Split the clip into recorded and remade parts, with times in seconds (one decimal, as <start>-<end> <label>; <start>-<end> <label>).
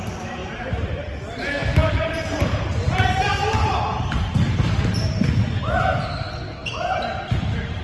0.0-0.4 recorded; 0.4-1.1 remade; 1.1-1.8 recorded; 1.8-5.8 remade; 5.8-6.6 recorded; 6.6-7.8 remade